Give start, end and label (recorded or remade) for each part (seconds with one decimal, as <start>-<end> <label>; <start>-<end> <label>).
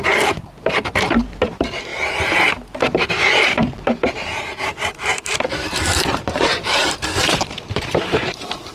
0.0-1.9 remade; 1.9-3.1 recorded; 3.1-8.7 remade